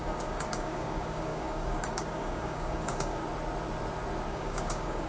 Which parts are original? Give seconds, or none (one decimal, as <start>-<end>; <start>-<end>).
3.2-4.3